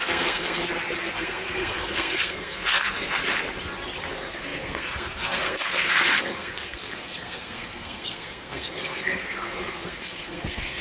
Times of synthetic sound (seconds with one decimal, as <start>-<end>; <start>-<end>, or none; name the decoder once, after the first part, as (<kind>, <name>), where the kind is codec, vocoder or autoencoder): 0.0-0.6 (codec, SNAC); 1.1-3.2; 4.1-10.8